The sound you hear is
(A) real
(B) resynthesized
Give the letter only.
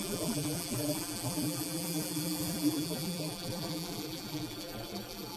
B